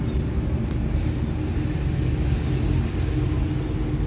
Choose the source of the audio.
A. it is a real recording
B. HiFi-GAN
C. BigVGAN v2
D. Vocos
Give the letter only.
A